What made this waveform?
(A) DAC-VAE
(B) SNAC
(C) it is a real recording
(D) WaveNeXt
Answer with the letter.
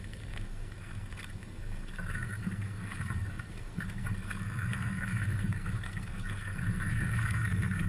B